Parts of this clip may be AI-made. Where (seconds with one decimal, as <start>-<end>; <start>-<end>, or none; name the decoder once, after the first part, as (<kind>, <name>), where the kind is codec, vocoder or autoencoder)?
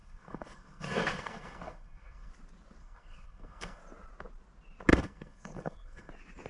0.0-2.3 (codec, SNAC); 2.8-3.8; 4.9-6.1